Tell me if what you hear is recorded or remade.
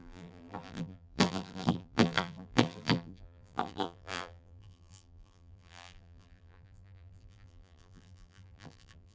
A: remade